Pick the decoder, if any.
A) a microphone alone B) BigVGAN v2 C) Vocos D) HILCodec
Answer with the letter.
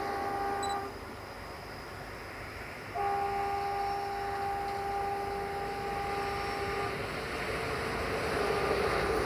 A